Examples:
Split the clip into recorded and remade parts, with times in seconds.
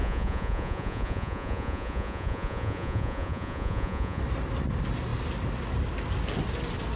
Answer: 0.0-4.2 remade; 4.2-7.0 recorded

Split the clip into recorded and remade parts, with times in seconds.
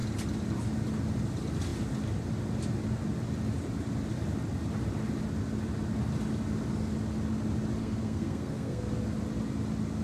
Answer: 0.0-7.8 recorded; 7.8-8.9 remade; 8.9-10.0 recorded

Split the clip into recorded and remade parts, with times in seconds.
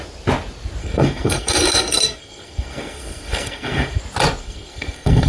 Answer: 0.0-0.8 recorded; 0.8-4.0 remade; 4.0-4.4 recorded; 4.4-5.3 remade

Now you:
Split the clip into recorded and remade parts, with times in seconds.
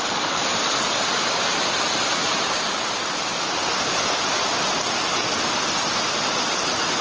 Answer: 0.0-7.0 recorded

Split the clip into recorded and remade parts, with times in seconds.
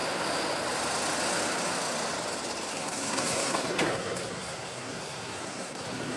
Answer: 0.0-2.7 recorded; 2.7-6.2 remade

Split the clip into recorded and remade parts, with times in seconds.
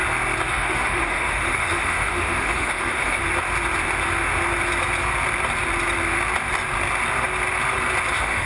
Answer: 0.0-0.5 recorded; 0.5-3.2 remade; 3.2-8.1 recorded; 8.1-8.5 remade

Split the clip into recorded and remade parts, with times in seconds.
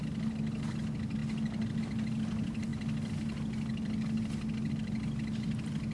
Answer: 0.0-5.9 recorded